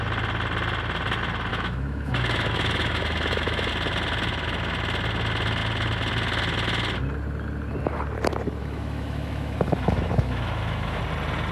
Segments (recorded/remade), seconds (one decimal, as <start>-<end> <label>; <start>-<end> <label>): 0.0-1.5 recorded; 1.5-3.7 remade; 3.7-8.6 recorded; 8.6-11.0 remade; 11.0-11.5 recorded